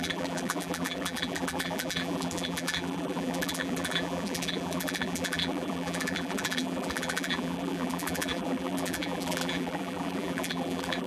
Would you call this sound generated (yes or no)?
yes